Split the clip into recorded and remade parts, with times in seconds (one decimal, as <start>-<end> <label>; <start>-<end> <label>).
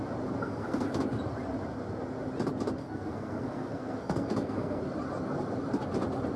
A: 0.0-0.4 recorded; 0.4-1.0 remade; 1.0-2.8 recorded; 2.8-4.8 remade; 4.8-6.4 recorded